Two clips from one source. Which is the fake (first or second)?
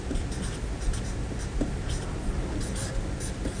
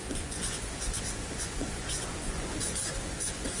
second